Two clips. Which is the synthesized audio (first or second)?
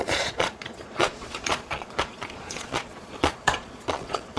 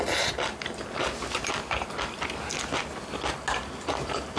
first